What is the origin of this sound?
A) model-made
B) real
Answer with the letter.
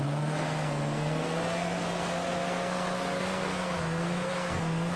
A